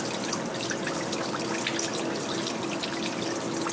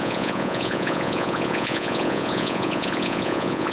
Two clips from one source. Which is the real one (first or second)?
first